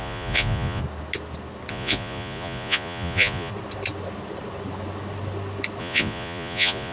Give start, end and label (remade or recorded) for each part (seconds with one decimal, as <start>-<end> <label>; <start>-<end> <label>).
0.0-0.8 remade; 0.8-1.7 recorded; 1.7-3.5 remade; 3.5-5.8 recorded; 5.8-6.9 remade